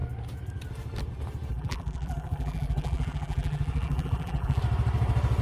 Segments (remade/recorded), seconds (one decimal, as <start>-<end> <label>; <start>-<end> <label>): 0.0-1.5 recorded; 1.5-4.6 remade; 4.6-5.4 recorded